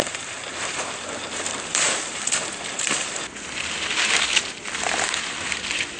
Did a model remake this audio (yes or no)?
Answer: yes